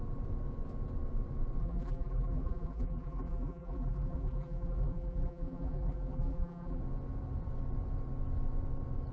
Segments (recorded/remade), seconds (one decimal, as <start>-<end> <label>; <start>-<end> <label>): 0.0-1.6 recorded; 1.6-6.8 remade; 6.8-9.1 recorded